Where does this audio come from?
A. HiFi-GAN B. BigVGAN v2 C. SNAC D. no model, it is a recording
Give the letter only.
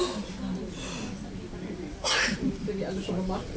D